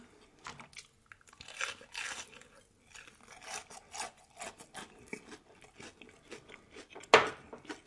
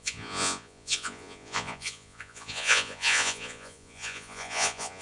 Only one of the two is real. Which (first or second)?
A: first